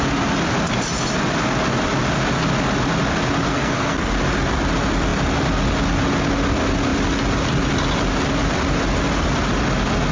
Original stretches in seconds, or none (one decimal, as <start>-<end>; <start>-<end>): 0.0-3.5; 4.1-10.1